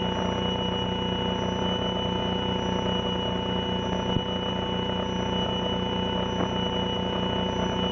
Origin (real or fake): real